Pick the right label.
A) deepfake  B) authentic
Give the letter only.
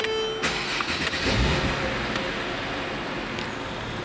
B